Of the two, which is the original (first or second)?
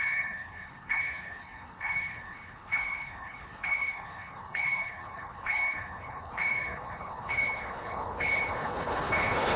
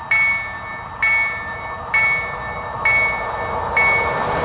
second